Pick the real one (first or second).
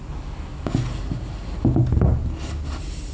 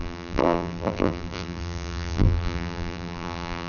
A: first